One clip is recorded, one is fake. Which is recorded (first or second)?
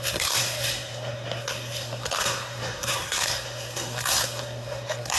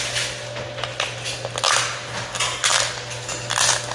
second